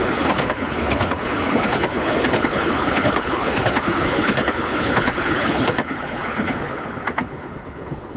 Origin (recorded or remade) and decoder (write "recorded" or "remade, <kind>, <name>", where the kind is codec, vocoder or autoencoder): remade, codec, HILCodec